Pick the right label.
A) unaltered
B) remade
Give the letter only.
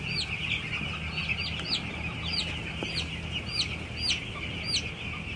A